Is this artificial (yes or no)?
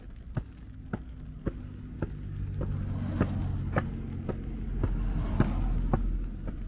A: no